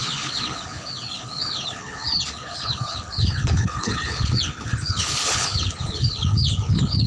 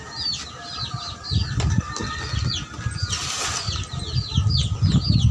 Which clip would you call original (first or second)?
second